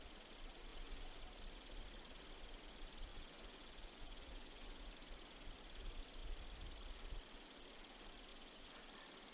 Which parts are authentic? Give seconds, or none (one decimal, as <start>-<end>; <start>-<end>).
0.0-0.7; 1.2-3.1; 4.8-8.3; 8.8-9.3